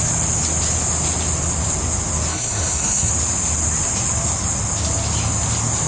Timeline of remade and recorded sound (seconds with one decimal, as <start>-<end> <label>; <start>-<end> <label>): 0.0-2.3 recorded; 2.3-3.1 remade; 3.1-5.9 recorded